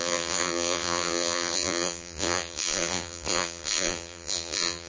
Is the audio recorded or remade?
remade